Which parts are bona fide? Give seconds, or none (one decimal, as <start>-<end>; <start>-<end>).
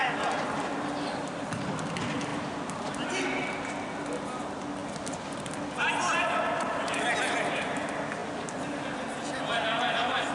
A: 0.0-10.3